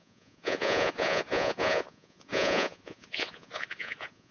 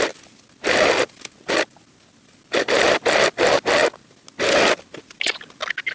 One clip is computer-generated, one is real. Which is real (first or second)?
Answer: second